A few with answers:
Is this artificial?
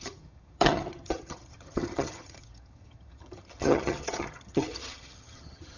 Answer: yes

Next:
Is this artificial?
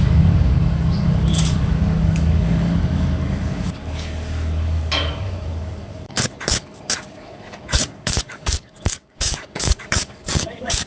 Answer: yes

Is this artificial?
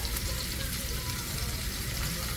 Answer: yes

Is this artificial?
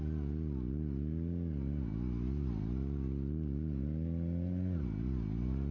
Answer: no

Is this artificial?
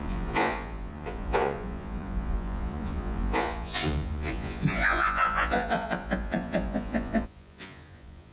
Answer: yes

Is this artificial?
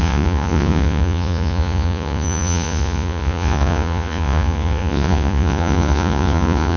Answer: yes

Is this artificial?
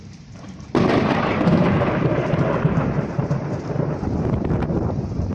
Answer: yes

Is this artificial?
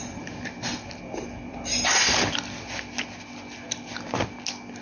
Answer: no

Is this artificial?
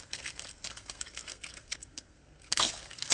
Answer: yes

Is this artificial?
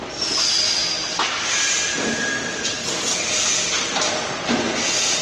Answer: no